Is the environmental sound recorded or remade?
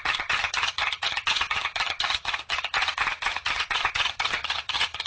remade